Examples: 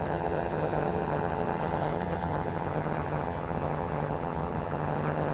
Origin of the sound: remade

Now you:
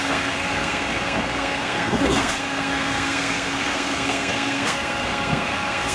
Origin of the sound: remade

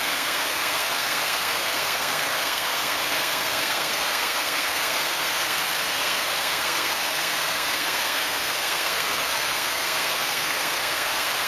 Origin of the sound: remade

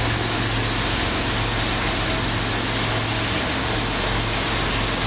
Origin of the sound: recorded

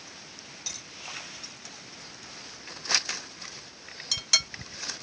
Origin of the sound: recorded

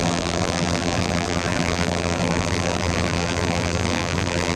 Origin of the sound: remade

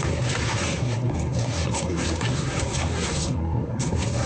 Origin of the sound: remade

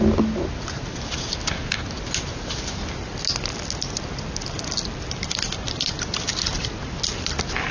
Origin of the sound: recorded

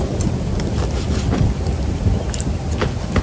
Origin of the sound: recorded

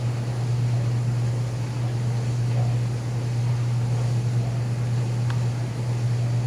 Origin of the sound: recorded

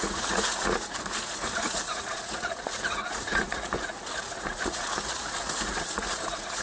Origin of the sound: remade